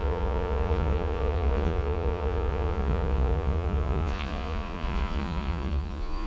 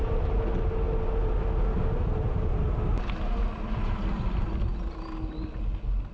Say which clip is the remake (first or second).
first